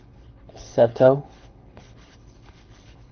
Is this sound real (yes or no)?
no